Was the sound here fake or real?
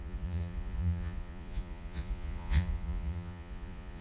fake